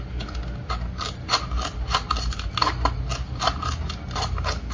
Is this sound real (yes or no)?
yes